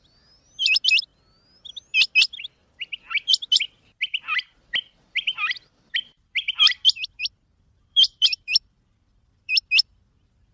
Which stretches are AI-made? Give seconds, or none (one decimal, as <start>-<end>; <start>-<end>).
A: 2.6-3.3; 4.3-9.5